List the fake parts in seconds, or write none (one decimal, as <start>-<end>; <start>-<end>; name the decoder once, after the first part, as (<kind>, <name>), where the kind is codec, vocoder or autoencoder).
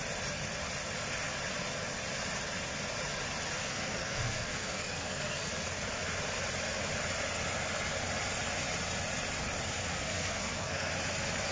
3.6-5.5 (codec, SNAC); 9.9-10.9